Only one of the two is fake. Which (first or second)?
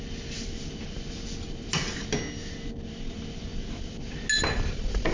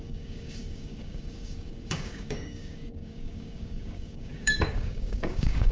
second